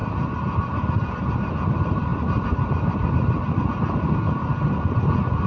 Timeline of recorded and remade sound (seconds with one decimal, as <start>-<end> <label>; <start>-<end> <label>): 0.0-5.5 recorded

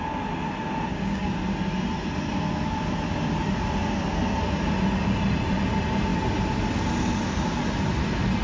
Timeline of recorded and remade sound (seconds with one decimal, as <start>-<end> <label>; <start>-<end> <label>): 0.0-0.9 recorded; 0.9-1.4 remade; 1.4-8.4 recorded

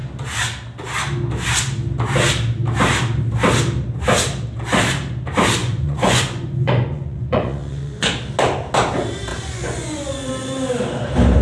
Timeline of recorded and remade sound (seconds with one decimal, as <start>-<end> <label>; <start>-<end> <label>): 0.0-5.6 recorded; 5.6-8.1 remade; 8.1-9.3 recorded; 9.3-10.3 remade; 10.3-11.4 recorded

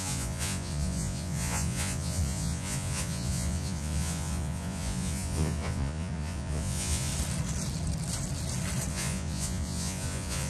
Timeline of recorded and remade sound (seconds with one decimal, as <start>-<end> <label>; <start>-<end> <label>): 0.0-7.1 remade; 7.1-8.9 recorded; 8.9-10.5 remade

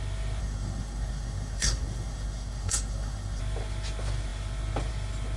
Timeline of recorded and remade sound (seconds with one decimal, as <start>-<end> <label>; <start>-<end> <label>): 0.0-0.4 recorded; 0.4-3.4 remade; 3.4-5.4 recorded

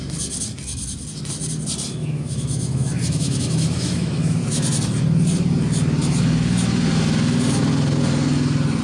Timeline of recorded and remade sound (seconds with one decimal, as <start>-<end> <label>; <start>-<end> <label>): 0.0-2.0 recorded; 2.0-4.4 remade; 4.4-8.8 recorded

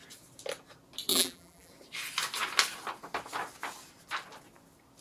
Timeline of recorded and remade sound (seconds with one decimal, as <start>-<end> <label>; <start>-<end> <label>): 0.0-1.1 recorded; 1.1-1.7 remade; 1.7-5.0 recorded

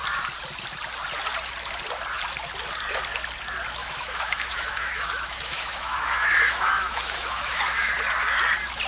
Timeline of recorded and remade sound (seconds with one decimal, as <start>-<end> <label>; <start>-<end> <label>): 0.0-3.8 recorded; 3.8-7.9 remade; 7.9-8.9 recorded